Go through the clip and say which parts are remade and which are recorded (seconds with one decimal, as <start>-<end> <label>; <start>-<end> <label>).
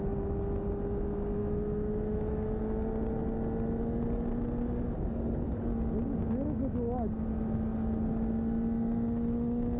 0.0-1.4 recorded; 1.4-2.6 remade; 2.6-9.8 recorded